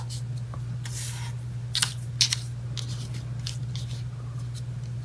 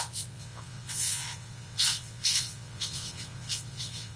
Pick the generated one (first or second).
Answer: second